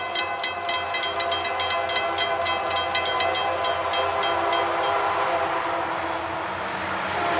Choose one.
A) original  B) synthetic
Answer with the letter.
A